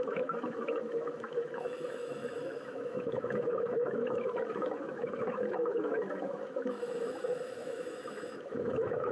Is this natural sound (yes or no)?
no